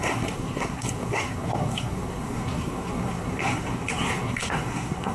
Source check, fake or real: fake